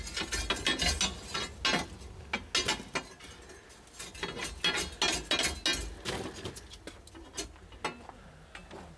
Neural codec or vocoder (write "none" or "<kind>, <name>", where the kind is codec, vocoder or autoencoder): none